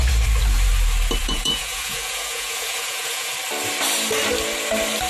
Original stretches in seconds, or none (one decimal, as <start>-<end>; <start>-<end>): 0.0-1.2; 3.3-5.1

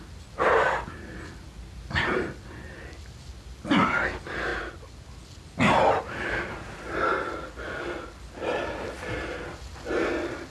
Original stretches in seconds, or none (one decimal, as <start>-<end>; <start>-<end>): 0.0-10.5